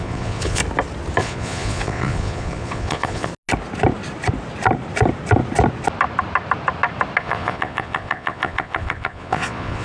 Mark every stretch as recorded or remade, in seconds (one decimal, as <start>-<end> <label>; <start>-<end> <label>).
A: 0.0-0.6 remade; 0.6-1.2 recorded; 1.2-3.3 remade; 3.3-7.2 recorded; 7.2-9.8 remade